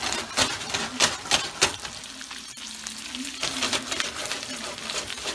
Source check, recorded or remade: recorded